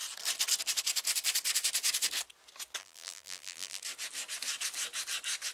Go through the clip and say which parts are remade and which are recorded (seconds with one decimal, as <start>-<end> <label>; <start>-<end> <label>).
0.0-2.8 recorded; 2.8-3.8 remade; 3.8-5.5 recorded